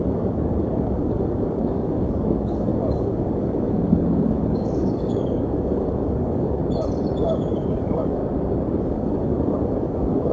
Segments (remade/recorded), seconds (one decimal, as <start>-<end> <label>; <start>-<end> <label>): 0.0-6.6 remade; 6.6-7.2 recorded; 7.2-8.2 remade; 8.2-8.8 recorded; 8.8-10.3 remade